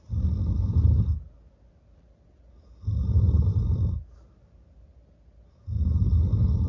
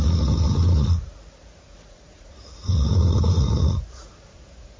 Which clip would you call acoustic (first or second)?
first